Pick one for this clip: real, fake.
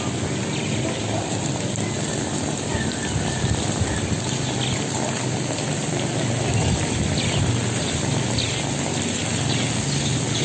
fake